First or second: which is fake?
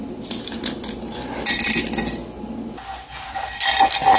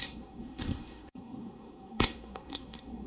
second